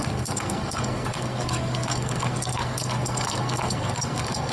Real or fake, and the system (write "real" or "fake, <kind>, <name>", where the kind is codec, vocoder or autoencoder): fake, codec, SNAC